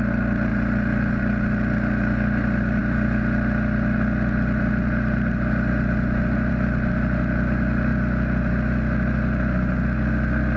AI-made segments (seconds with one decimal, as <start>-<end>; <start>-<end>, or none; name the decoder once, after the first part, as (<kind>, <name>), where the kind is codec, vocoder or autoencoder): none